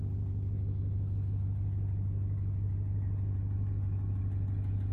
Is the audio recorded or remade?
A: recorded